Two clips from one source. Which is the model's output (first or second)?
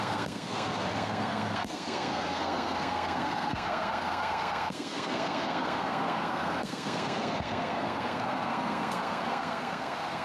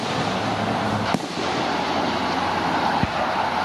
first